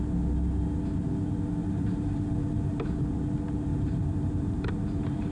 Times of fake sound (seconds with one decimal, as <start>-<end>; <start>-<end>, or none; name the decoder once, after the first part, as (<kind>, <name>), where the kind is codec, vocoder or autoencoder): 1.6-2.8 (vocoder, BigVGAN v2); 3.7-5.3

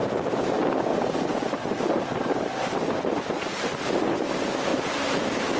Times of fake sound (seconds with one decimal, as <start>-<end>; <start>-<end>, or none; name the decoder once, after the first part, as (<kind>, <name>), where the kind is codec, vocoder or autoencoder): 0.0-0.5 (vocoder, BigVGAN v2); 0.9-3.7; 4.7-5.6

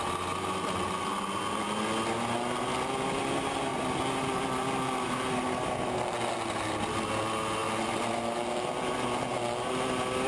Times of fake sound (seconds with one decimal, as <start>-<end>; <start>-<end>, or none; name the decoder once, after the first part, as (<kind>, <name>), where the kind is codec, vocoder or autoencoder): none